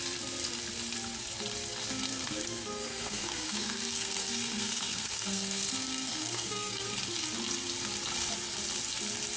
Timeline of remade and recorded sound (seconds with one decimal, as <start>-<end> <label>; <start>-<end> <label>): 0.0-2.1 recorded; 2.1-7.0 remade; 7.0-9.4 recorded